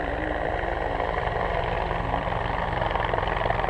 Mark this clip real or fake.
fake